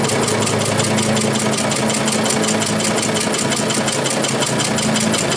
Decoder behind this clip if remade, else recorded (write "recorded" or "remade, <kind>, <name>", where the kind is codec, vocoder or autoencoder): recorded